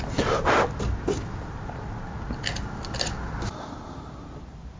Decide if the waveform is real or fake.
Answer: real